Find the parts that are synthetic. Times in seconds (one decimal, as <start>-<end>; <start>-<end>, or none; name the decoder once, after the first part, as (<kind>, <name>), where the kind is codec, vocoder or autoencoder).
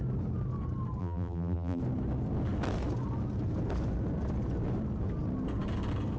1.0-1.8 (vocoder, BigVGAN v2)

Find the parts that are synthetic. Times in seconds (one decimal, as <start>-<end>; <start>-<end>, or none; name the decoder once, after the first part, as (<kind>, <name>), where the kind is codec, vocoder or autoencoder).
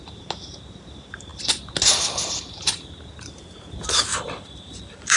4.1-5.2 (vocoder, BigVGAN v2)